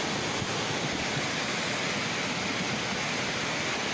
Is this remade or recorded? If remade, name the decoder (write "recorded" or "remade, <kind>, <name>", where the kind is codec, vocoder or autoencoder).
recorded